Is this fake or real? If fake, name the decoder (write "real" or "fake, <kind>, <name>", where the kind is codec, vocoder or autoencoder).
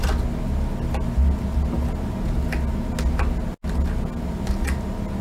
real